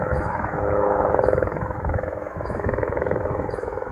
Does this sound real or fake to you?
fake